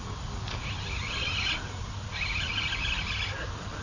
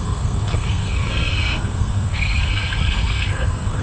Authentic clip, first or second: first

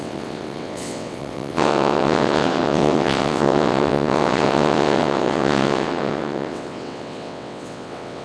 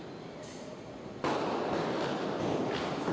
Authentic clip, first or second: second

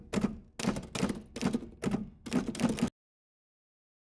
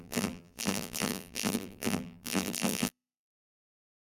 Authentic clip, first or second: first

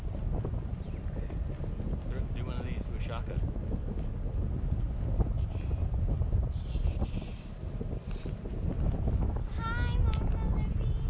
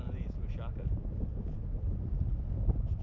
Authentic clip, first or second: first